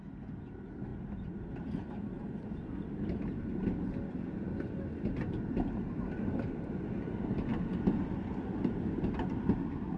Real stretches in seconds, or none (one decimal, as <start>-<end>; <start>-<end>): 0.0-10.0